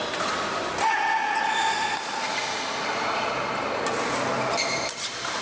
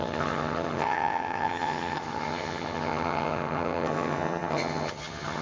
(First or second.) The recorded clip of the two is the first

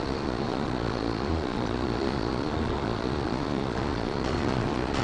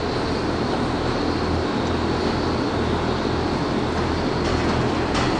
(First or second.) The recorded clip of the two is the second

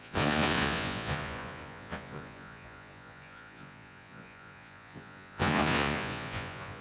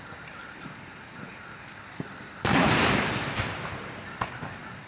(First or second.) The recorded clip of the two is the second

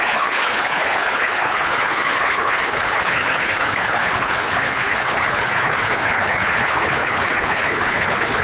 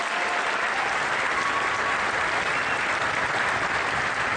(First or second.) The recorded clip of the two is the second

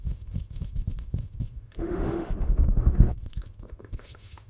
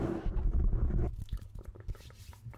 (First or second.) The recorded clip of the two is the second